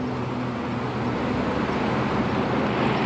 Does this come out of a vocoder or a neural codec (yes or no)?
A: no